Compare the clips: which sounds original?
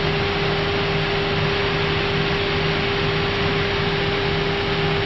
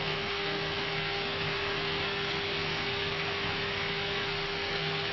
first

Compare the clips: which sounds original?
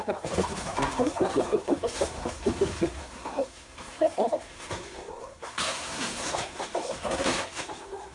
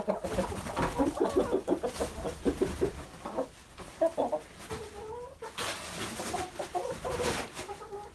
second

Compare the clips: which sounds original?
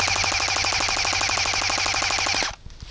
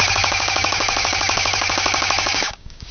first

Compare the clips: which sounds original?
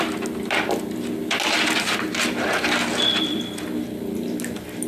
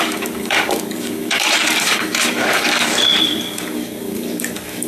first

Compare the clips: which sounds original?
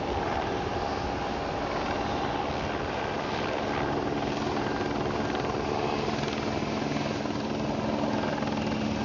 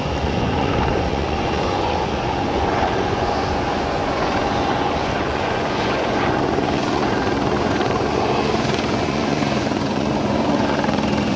first